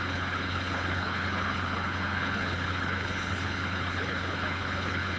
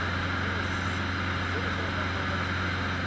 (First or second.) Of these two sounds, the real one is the second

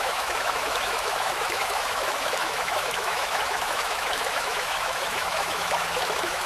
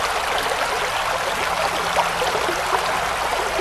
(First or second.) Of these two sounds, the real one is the second